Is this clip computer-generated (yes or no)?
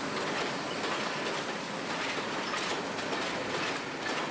no